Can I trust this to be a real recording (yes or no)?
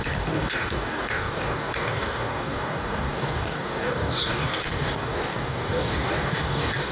no